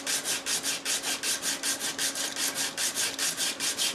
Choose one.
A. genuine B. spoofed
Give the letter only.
A